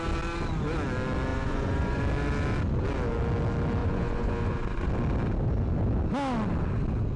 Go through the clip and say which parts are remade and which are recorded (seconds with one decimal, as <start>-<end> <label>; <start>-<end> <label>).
0.0-1.3 recorded; 1.3-2.0 remade; 2.0-3.8 recorded; 3.8-4.9 remade; 4.9-7.2 recorded